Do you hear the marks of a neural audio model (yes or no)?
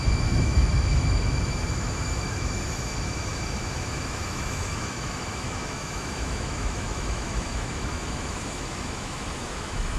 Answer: yes